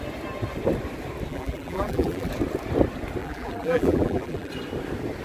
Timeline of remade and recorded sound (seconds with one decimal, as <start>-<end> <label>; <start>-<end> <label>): 0.0-1.3 recorded; 1.3-2.3 remade; 2.3-3.2 recorded; 3.2-4.5 remade; 4.5-5.2 recorded

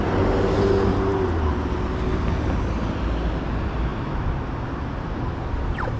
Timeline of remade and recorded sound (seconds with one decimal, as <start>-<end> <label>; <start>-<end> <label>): 0.0-3.9 recorded; 3.9-4.5 remade; 4.5-6.0 recorded

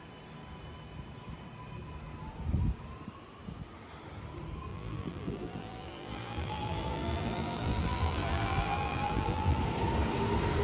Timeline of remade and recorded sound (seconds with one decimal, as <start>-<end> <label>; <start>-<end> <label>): 0.0-4.7 recorded; 4.7-9.6 remade; 9.6-10.6 recorded

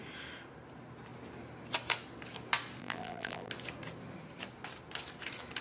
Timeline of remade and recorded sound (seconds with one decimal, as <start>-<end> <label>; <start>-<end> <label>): 0.0-2.8 recorded; 2.8-3.5 remade; 3.5-5.6 recorded